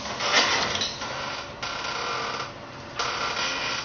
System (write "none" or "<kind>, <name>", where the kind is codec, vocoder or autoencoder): none